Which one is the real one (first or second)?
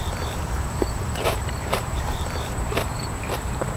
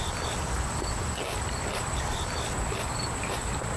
second